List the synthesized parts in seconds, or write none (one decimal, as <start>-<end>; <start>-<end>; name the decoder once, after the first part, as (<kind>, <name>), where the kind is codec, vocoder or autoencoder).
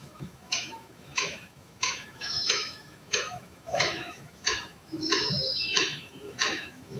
0.0-7.0 (autoencoder, DAC-VAE)